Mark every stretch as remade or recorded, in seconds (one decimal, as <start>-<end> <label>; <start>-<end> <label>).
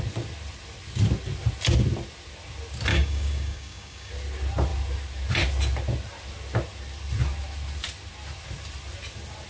0.0-2.9 recorded; 2.9-4.1 remade; 4.1-9.5 recorded